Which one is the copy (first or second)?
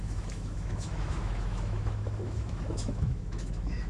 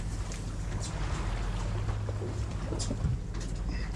first